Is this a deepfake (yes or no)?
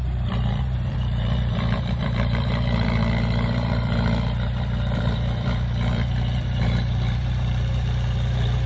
yes